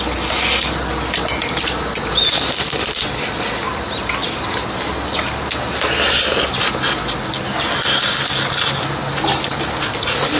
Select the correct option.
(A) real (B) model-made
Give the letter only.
A